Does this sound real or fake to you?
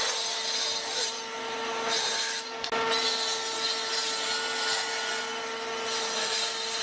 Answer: real